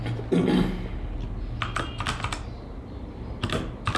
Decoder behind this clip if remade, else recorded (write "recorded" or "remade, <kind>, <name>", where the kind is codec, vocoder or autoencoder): recorded